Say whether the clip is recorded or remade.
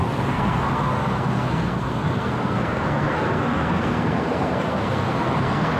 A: remade